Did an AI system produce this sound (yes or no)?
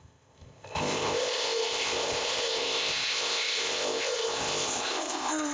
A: yes